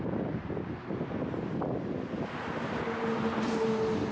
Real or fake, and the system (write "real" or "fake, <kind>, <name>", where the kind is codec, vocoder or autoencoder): real